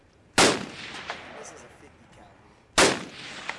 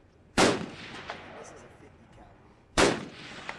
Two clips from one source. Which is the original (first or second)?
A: first